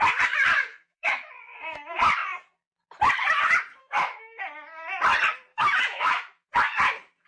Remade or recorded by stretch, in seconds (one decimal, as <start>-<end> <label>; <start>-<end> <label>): 0.0-0.7 recorded; 0.7-1.3 remade; 1.3-3.8 recorded; 3.8-4.4 remade; 4.4-5.5 recorded; 5.5-6.5 remade; 6.5-7.3 recorded

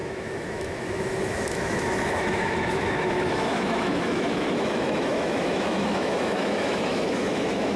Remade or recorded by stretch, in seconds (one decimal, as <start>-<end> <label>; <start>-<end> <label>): 0.0-7.8 remade

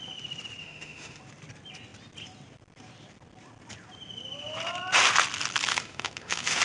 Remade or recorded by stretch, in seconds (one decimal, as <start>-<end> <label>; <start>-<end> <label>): 0.0-0.6 recorded; 0.6-1.2 remade; 1.2-5.7 recorded; 5.7-6.6 remade